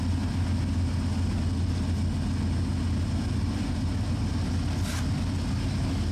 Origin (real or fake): real